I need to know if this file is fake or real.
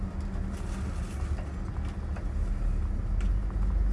real